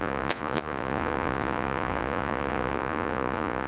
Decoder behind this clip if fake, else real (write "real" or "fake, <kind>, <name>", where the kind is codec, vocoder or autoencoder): fake, vocoder, Vocos